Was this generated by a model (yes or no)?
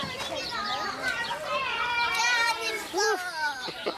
yes